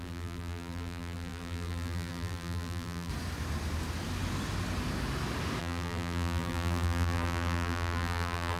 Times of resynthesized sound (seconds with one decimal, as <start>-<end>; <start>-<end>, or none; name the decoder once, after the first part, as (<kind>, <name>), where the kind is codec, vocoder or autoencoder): 0.0-3.1 (vocoder, BigVGAN v2); 5.6-8.6